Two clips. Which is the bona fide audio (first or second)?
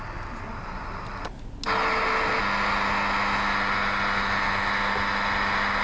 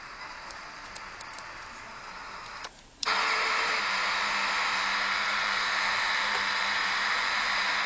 first